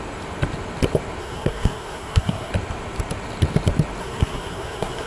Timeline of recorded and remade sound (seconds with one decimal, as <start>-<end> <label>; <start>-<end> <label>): 0.0-1.2 recorded; 1.2-2.5 remade; 2.5-4.0 recorded; 4.0-5.1 remade